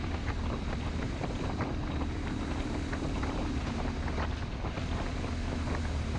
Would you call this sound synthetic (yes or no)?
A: no